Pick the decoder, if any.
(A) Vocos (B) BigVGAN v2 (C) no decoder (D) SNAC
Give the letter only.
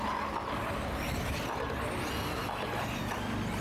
C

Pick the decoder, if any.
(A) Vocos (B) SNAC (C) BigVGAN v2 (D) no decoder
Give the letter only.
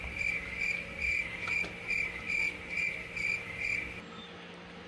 D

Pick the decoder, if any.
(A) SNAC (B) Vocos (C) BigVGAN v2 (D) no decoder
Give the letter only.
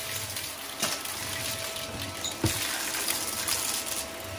D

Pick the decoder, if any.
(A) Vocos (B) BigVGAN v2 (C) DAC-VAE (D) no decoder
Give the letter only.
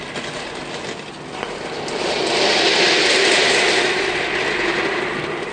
D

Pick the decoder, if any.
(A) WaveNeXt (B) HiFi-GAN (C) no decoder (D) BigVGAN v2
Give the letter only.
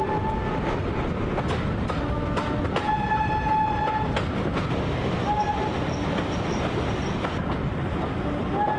C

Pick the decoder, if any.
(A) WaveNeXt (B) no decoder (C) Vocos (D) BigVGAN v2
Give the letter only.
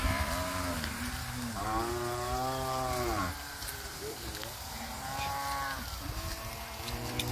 D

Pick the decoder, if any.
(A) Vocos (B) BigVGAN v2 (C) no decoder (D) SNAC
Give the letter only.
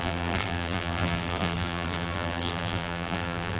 B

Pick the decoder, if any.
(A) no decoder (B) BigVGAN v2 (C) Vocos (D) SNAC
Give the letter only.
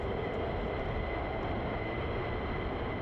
A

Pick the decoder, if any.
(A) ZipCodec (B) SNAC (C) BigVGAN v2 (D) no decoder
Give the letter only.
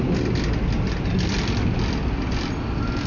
D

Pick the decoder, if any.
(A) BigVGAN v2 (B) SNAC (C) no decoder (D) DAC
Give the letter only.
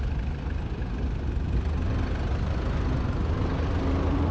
C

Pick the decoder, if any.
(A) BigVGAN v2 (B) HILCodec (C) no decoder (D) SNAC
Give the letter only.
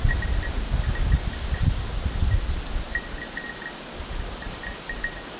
C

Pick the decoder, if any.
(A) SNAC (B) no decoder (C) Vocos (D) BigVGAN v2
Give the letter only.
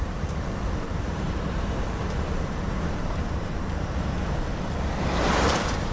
D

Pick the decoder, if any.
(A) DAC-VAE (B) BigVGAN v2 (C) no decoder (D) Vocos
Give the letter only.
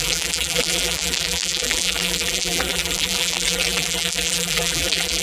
B